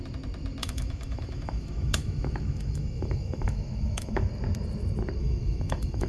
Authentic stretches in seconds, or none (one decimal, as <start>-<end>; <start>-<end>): 0.0-0.6; 4.3-5.2